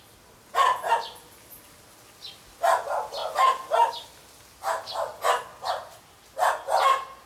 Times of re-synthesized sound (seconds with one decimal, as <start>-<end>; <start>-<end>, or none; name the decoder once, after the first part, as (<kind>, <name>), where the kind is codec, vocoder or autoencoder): none